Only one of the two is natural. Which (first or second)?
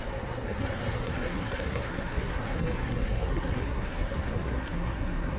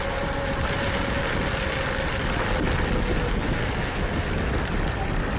second